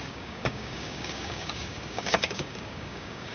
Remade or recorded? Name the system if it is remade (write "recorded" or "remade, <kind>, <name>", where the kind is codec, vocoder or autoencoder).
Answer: remade, codec, DAC